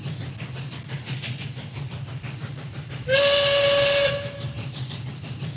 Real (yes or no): yes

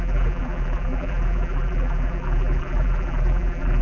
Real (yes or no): no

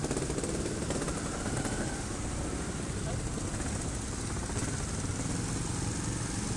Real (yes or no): yes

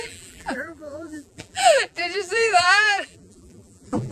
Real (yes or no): no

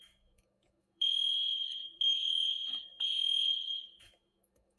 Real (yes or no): no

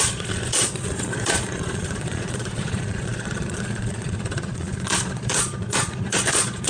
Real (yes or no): no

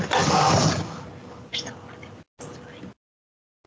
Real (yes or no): yes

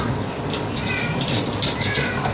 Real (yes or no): yes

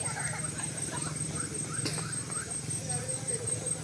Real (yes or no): yes